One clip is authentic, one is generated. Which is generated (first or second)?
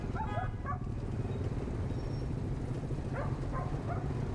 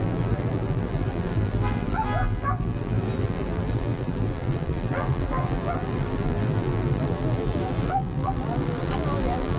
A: second